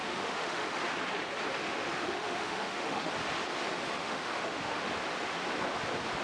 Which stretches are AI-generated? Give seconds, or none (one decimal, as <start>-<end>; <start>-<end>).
0.0-0.8; 1.6-3.1; 4.0-4.9